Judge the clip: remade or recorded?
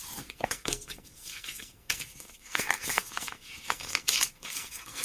remade